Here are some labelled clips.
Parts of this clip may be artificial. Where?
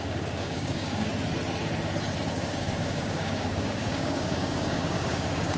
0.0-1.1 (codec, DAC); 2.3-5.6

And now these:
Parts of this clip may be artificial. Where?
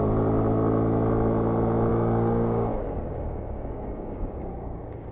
1.9-5.1 (codec, DAC)